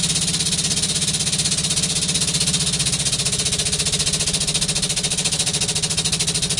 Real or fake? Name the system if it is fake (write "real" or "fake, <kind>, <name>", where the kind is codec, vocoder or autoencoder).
real